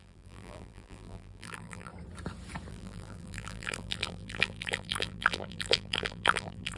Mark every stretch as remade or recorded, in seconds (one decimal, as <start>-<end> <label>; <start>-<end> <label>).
0.0-1.9 remade; 1.9-2.7 recorded; 2.7-6.8 remade